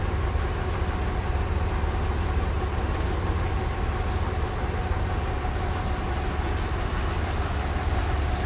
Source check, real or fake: real